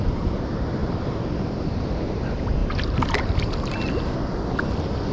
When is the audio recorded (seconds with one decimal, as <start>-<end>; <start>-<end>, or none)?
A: 0.0-0.8; 2.0-2.6; 3.6-5.1